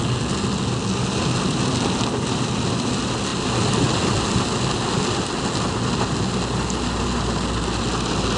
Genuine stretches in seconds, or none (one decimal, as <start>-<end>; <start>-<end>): 0.0-8.4